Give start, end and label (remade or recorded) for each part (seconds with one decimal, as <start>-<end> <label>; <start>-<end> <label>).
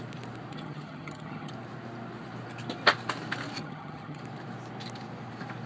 0.0-0.5 recorded; 0.5-1.5 remade; 1.5-3.6 recorded; 3.6-4.2 remade; 4.2-5.7 recorded